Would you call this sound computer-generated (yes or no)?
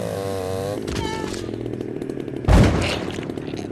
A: no